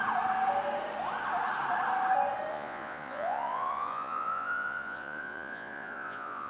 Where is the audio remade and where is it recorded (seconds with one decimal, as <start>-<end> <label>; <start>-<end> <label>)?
0.0-2.5 recorded; 2.5-6.5 remade